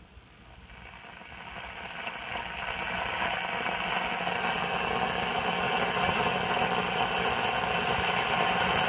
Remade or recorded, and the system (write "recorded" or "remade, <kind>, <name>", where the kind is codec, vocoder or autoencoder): recorded